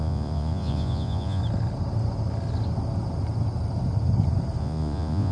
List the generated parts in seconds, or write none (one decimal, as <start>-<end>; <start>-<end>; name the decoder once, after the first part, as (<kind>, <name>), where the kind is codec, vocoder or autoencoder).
0.0-1.4 (vocoder, Vocos); 4.6-5.3